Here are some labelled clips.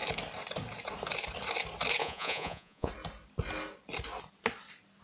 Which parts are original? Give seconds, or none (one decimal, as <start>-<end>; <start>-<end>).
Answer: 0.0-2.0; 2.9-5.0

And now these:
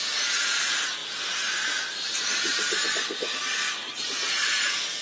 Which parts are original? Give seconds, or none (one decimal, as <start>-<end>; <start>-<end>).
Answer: 1.0-4.0

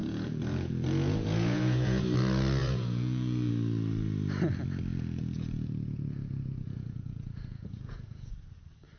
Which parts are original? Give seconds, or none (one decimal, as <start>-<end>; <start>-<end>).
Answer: 2.0-2.6; 3.5-4.9; 8.3-9.0

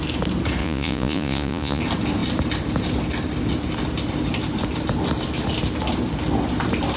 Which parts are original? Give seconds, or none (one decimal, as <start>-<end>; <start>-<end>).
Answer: 0.0-0.6; 1.8-7.0

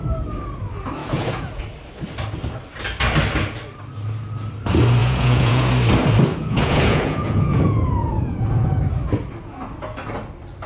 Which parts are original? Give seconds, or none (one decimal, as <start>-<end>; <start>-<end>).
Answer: 0.0-1.0; 1.6-5.0; 5.7-6.3; 8.8-10.7

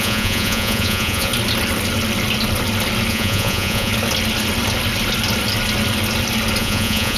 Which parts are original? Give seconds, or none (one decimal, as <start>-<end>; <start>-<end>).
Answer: 1.3-3.1; 3.9-6.6

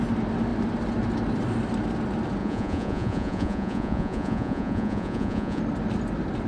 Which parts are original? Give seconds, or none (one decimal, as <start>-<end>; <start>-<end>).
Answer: 0.0-2.4; 5.6-6.5